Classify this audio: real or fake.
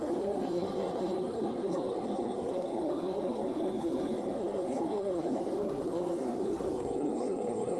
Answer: fake